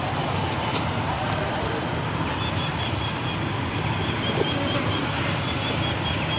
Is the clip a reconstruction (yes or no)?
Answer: no